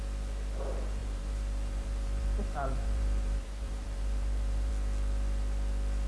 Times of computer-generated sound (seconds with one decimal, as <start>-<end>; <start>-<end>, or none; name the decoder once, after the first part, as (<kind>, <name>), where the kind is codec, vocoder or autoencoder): 1.0-4.7 (vocoder, BigVGAN v2)